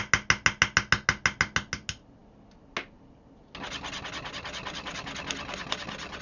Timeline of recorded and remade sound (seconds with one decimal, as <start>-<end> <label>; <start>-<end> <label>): 0.0-6.2 recorded